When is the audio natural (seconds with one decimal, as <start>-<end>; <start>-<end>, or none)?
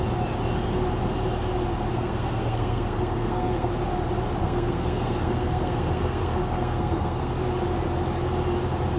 0.0-1.9; 3.7-4.4; 7.3-9.0